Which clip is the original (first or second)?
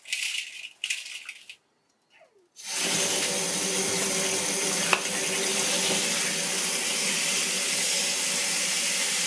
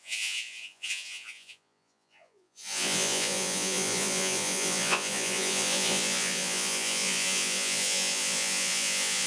first